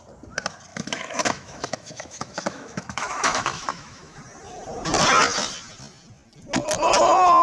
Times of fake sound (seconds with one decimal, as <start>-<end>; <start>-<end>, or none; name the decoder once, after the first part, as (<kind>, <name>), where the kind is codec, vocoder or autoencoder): 0.7-4.2 (autoencoder, DAC-VAE)